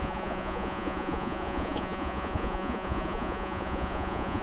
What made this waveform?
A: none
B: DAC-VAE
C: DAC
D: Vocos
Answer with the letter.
D